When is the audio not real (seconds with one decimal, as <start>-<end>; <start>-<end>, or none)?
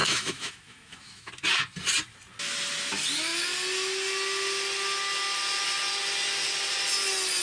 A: 0.0-1.3